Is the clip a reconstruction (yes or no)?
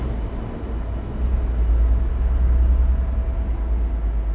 no